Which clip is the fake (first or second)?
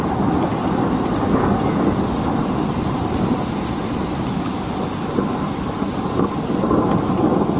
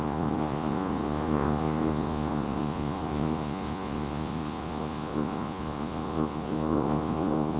second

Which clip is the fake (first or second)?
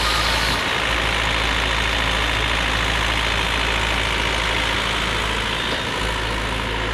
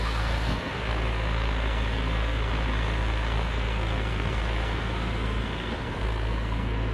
second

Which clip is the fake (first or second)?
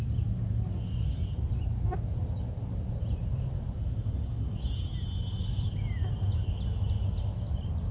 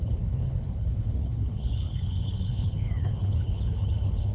second